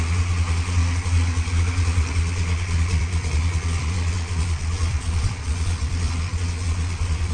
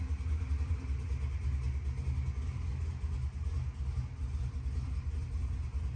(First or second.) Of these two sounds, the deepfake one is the first